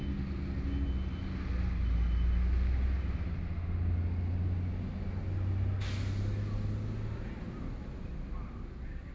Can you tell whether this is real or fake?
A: real